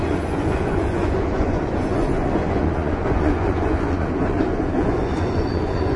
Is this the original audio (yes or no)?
no